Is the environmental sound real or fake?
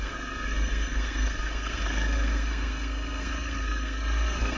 fake